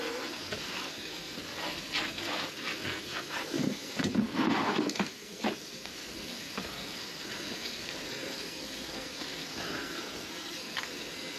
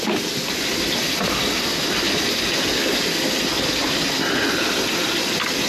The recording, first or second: second